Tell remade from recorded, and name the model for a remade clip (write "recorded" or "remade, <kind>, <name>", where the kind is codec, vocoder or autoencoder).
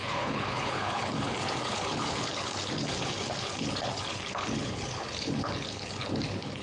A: remade, codec, HILCodec